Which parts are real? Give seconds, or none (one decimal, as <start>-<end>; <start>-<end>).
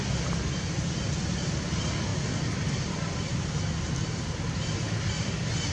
0.0-5.7